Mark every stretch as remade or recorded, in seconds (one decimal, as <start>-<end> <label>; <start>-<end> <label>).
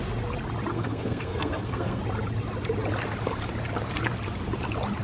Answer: 0.0-0.7 recorded; 0.7-2.0 remade; 2.0-5.0 recorded